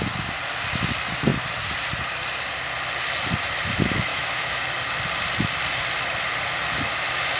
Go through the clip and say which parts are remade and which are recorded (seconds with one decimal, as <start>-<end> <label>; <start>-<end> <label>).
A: 0.0-4.1 recorded; 4.1-4.6 remade; 4.6-7.4 recorded